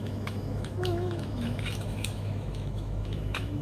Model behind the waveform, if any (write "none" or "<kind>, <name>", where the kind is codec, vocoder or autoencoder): autoencoder, DAC-VAE